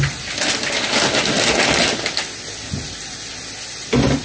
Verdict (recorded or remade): recorded